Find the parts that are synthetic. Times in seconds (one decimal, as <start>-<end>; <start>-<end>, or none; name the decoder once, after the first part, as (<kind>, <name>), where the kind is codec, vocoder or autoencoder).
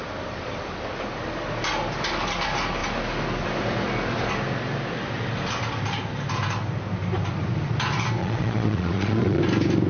8.2-9.4 (vocoder, Vocos)